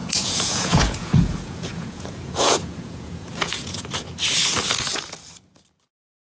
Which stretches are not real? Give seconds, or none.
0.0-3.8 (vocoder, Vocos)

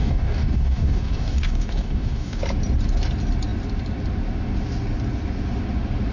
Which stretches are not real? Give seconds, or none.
0.0-2.4 (codec, DAC)